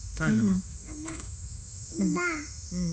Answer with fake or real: fake